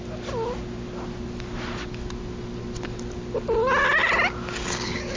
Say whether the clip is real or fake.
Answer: real